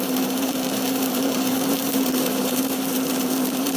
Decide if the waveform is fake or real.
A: fake